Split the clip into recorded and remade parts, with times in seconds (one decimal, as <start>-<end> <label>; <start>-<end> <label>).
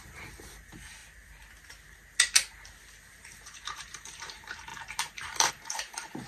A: 0.0-1.0 remade; 1.0-3.1 recorded; 3.1-4.7 remade; 4.7-5.5 recorded; 5.5-6.3 remade